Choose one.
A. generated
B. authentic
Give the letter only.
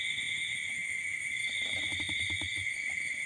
B